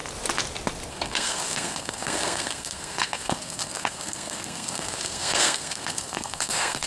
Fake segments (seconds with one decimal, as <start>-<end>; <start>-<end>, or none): 0.9-6.9